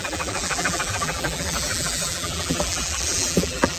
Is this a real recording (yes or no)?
no